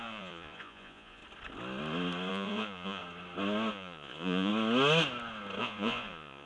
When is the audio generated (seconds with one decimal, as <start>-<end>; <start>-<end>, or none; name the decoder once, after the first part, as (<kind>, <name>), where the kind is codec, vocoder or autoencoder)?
0.0-1.2 (vocoder, Vocos); 2.3-3.0; 3.7-4.5; 5.6-6.5